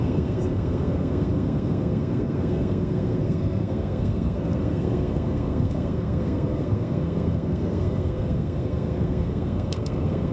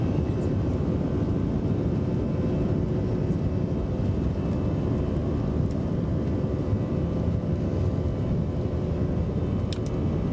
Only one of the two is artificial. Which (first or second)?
first